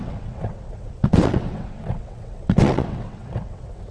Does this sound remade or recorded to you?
remade